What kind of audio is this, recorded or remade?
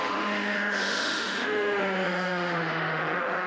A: remade